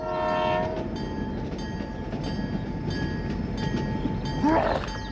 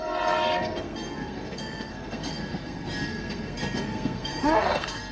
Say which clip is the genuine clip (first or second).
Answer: first